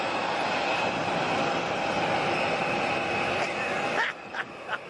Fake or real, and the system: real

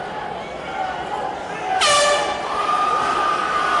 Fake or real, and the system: real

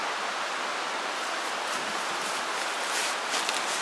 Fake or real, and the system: real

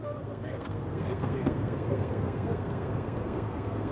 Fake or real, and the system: fake, codec, SNAC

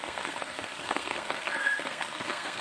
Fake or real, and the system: fake, codec, SNAC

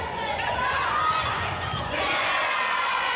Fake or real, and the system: fake, vocoder, Vocos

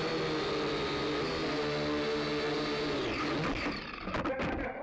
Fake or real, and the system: real